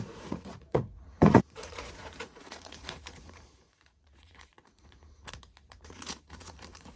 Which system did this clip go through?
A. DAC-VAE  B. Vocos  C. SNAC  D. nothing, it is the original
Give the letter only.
B